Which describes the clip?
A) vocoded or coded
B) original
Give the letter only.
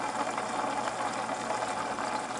B